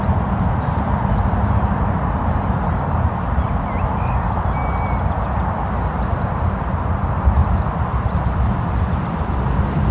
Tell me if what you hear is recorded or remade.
recorded